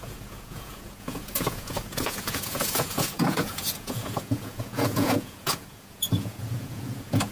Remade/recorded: remade